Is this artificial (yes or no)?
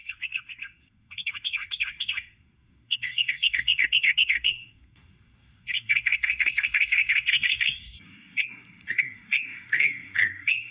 yes